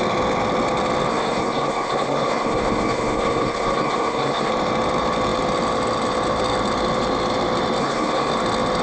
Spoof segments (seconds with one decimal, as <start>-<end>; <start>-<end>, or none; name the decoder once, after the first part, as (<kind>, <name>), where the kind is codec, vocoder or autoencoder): 1.1-4.5 (codec, SNAC); 7.8-8.3